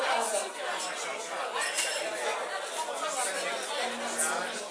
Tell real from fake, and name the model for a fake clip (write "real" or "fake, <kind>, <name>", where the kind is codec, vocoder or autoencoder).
real